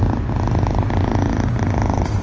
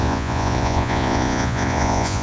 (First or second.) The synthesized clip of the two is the second